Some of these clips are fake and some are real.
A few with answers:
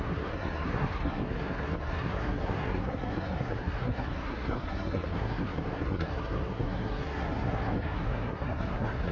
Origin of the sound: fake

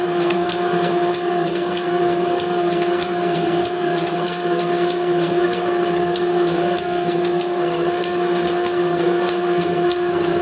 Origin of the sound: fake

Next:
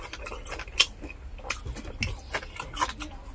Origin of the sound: real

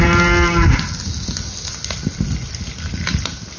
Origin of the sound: real